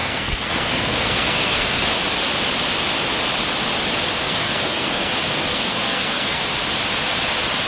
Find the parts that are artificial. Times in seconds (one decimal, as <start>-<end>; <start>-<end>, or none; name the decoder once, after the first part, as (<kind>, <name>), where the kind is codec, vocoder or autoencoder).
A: 0.0-1.8 (codec, SNAC); 4.2-5.1; 5.5-6.4